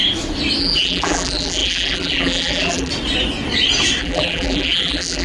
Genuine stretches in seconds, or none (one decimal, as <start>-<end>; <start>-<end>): 0.0-0.6; 2.9-4.0